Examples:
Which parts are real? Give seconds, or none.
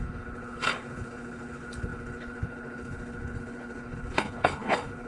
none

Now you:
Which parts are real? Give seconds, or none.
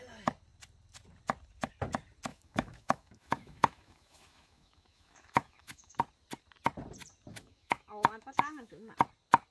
0.0-2.3; 6.0-7.3; 8.9-9.5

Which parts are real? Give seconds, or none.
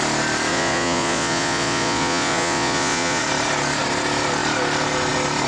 0.0-0.5; 3.2-5.5